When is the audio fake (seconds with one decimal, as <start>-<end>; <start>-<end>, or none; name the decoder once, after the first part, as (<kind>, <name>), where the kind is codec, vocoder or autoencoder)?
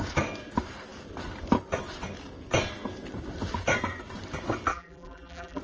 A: 4.7-5.6 (vocoder, BigVGAN v2)